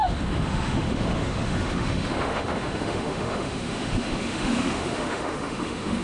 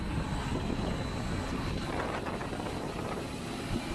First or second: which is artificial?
first